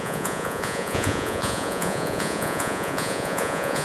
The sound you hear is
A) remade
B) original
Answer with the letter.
A